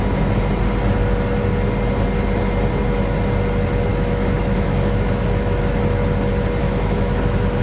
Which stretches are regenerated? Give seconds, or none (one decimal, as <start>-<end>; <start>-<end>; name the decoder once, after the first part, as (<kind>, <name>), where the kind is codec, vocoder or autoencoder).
3.9-5.8 (autoencoder, DAC-VAE); 6.6-7.6

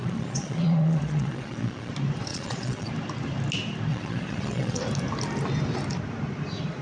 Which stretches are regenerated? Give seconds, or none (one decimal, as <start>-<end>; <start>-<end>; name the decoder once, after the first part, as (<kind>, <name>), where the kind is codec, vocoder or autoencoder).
0.0-1.9 (vocoder, Vocos); 2.3-2.9; 3.9-4.8

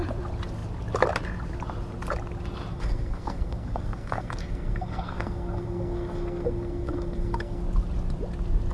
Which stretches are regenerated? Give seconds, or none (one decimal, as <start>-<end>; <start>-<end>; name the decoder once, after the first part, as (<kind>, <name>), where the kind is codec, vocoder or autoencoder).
2.7-7.6 (codec, SNAC)